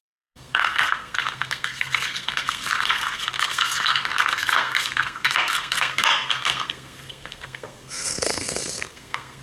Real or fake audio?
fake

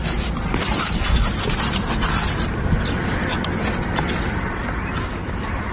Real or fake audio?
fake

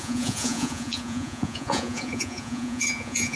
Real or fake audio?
fake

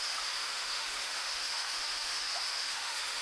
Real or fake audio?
fake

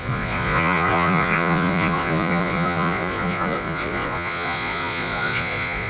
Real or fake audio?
fake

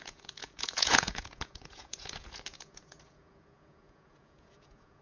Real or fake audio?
fake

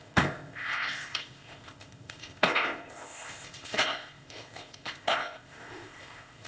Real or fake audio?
fake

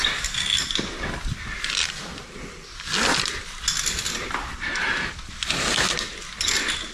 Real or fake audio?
real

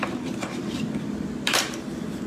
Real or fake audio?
fake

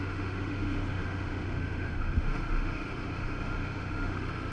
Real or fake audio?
fake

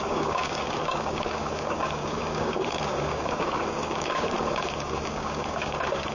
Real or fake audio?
fake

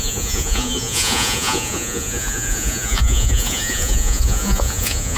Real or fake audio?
fake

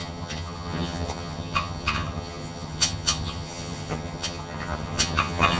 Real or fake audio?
fake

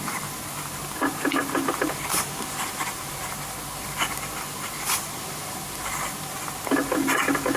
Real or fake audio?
real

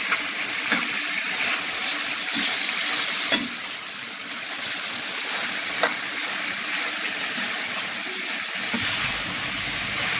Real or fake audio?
real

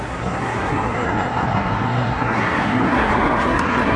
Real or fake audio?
fake